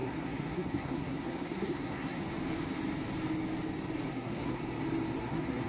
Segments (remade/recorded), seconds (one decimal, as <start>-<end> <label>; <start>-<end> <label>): 0.0-2.2 remade; 2.2-4.1 recorded; 4.1-4.6 remade; 4.6-5.2 recorded; 5.2-5.7 remade